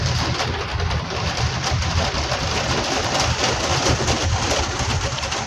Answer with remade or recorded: recorded